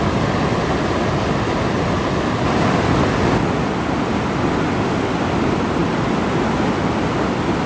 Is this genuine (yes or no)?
yes